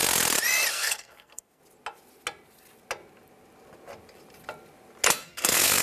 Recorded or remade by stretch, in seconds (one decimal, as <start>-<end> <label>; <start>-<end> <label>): 0.0-0.7 recorded; 0.7-1.6 remade; 1.6-5.1 recorded; 5.1-5.8 remade